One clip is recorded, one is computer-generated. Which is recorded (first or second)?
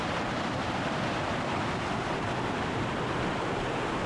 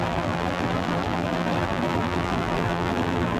first